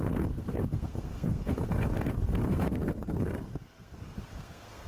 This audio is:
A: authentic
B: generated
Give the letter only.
B